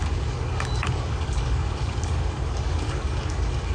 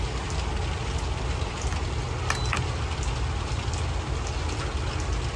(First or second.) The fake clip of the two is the first